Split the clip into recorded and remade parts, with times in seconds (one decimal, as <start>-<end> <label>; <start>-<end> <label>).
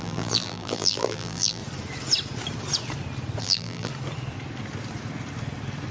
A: 0.0-1.6 remade; 1.6-3.4 recorded; 3.4-3.9 remade; 3.9-5.9 recorded